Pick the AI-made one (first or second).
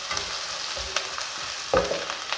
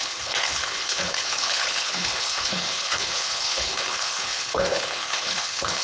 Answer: second